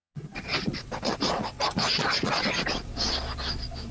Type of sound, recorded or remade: remade